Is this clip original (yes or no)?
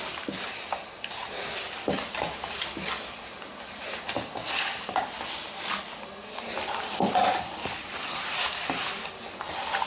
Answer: yes